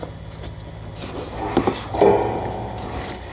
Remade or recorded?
recorded